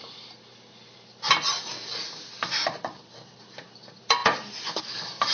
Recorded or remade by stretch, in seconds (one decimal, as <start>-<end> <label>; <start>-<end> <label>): 0.0-5.3 recorded